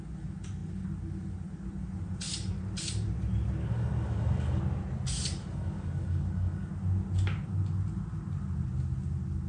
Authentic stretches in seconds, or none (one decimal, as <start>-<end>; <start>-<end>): 0.0-3.6; 4.6-5.4; 6.7-9.5